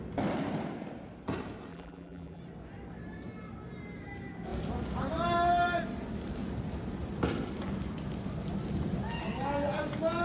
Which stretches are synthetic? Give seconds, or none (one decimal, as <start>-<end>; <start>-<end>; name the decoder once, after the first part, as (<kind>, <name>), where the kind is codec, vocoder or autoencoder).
1.7-2.4 (vocoder, BigVGAN v2)